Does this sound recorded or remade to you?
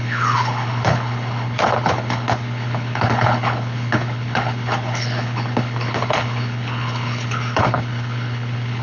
remade